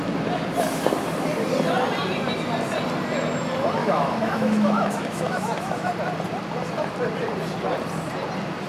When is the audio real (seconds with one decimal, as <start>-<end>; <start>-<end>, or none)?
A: 0.0-3.8; 5.9-8.7